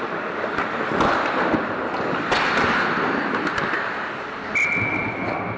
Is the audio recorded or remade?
recorded